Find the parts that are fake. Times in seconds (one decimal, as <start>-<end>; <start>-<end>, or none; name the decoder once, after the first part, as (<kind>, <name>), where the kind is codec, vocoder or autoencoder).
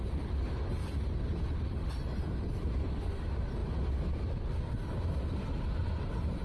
0.0-3.0 (vocoder, BigVGAN v2); 5.8-6.4